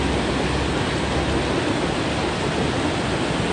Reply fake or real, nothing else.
real